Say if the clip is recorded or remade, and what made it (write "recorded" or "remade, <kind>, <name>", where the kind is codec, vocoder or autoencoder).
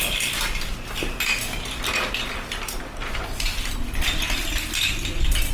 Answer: recorded